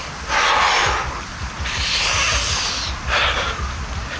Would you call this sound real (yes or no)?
yes